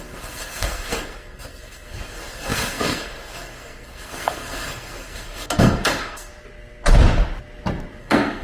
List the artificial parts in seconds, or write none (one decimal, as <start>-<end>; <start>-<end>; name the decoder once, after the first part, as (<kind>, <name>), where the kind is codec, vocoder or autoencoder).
0.0-6.3 (codec, SNAC); 8.0-8.4